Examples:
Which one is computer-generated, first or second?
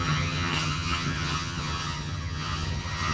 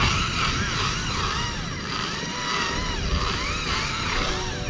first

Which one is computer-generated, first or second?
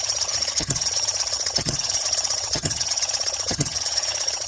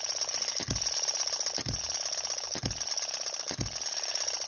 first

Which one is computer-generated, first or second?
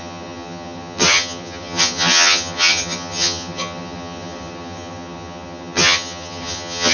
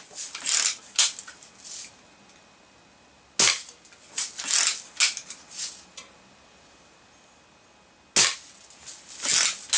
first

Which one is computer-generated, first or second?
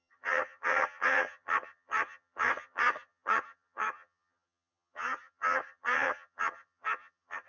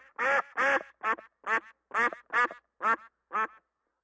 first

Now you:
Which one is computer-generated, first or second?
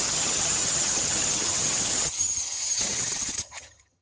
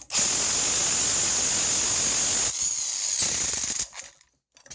first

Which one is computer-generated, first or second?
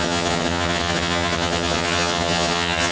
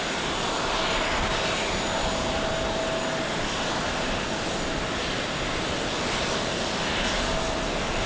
first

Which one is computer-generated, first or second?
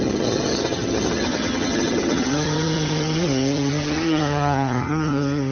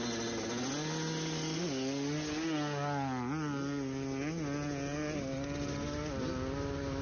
first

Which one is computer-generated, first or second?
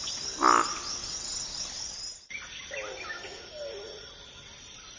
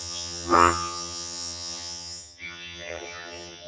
second